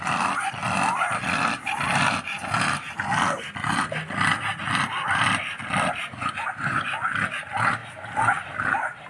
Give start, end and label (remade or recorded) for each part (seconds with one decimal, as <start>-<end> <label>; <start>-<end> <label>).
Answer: 0.0-6.0 recorded; 6.0-6.9 remade; 6.9-9.1 recorded